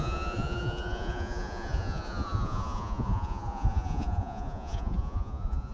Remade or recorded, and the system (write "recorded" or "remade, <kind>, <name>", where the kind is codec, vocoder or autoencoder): remade, vocoder, Vocos